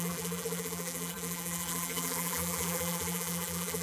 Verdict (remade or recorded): remade